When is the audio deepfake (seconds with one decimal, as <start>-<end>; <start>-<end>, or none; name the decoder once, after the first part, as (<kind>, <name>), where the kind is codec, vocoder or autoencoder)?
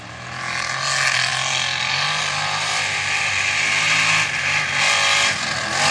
none